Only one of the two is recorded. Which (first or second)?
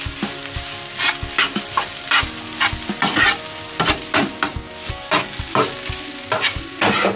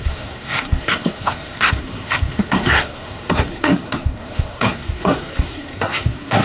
first